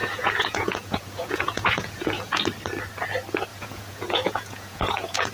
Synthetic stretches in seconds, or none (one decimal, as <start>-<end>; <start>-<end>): 0.0-2.4; 3.5-5.3